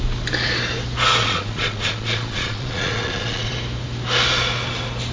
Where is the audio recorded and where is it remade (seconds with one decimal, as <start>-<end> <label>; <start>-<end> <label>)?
0.0-1.2 recorded; 1.2-3.5 remade; 3.5-5.1 recorded